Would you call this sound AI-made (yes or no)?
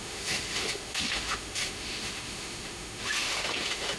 yes